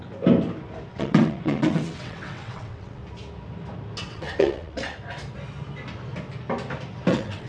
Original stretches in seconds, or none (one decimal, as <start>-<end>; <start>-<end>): 0.0-0.9; 3.0-4.0; 4.9-7.1